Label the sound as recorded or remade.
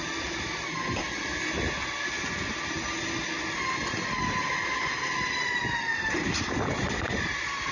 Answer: recorded